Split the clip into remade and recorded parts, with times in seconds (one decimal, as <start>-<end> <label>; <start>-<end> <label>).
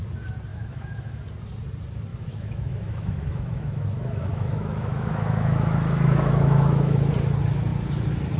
0.0-0.5 recorded; 0.5-1.2 remade; 1.2-2.1 recorded; 2.1-7.1 remade; 7.1-8.4 recorded